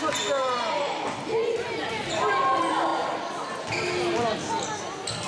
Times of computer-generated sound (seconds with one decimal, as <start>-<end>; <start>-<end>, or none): none